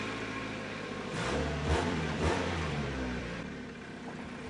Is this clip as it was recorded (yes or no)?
no